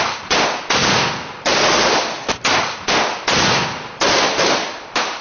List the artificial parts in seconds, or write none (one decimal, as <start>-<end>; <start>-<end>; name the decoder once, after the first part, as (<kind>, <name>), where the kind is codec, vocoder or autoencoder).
none